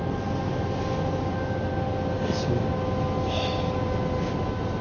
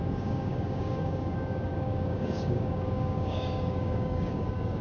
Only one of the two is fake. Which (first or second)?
second